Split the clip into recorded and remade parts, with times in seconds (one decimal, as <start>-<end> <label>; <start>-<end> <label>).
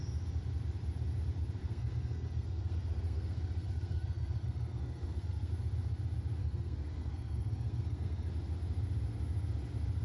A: 0.0-1.6 recorded; 1.6-5.5 remade; 5.5-6.4 recorded; 6.4-8.3 remade; 8.3-10.0 recorded